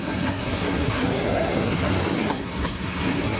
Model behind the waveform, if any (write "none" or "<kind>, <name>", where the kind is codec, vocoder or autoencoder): codec, SNAC